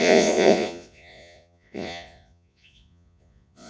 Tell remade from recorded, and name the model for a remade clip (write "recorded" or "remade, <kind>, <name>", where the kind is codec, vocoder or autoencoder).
remade, vocoder, Vocos